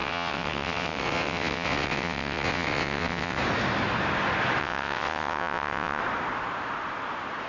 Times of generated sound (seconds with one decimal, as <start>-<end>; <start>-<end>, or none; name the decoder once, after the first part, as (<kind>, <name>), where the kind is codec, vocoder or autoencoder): 0.0-3.4 (vocoder, WaveNeXt); 4.6-6.0